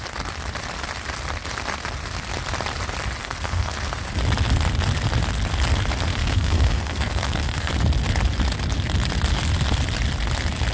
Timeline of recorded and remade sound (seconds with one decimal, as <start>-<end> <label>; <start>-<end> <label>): 0.0-3.2 recorded; 3.2-3.7 remade; 3.7-6.1 recorded; 6.1-7.7 remade; 7.7-10.7 recorded